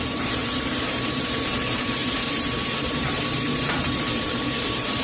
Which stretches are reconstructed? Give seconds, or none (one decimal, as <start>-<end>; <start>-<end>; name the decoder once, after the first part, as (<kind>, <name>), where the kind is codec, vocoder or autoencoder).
0.0-5.0 (vocoder, BigVGAN v2)